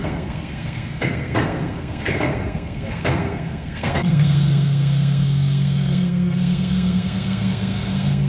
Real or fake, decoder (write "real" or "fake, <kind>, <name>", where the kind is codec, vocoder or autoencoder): fake, codec, SNAC